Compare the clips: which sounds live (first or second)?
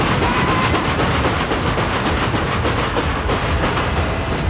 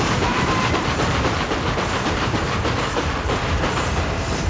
first